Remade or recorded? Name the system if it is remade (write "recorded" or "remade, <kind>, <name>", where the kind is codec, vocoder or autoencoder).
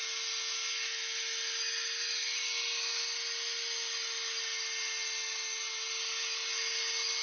recorded